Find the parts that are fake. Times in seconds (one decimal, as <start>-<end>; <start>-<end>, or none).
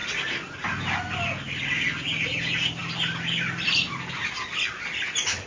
none